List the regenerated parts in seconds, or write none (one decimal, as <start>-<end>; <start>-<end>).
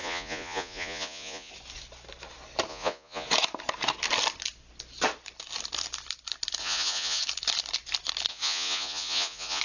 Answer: 0.0-1.5; 2.7-3.3; 6.6-7.2; 8.3-9.6